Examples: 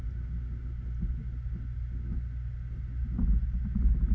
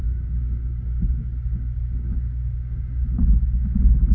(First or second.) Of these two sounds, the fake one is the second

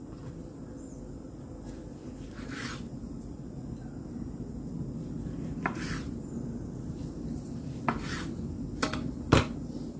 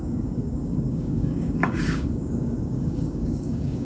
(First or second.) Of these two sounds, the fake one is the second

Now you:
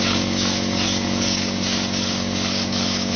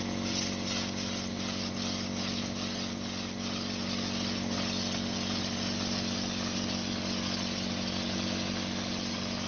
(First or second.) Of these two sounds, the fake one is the first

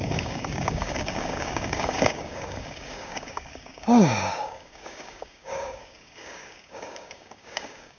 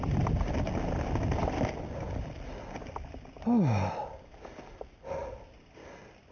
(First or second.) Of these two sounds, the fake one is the first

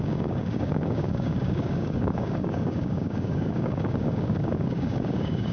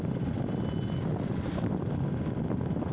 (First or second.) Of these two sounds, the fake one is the first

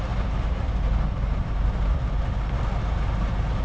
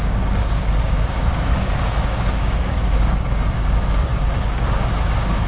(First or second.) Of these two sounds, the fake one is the second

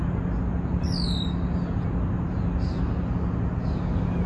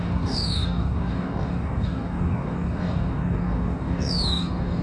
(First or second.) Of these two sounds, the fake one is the second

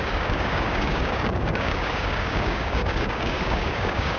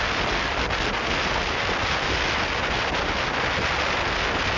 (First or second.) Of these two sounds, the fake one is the first